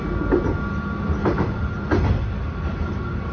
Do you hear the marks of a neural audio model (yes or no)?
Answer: no